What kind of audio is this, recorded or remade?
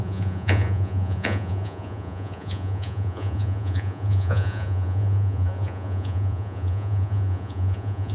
remade